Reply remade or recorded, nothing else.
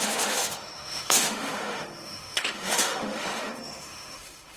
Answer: remade